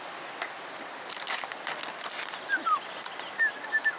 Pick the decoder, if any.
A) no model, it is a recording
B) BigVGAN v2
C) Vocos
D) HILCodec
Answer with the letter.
A